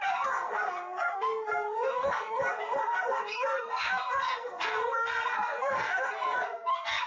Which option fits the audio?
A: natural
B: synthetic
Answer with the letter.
B